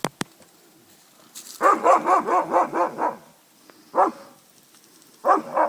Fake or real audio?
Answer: real